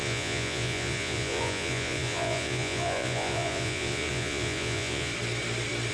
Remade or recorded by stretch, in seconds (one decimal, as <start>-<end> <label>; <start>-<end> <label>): 0.0-5.1 remade; 5.1-5.9 recorded